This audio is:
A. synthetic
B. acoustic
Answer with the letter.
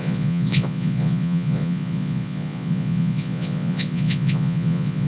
A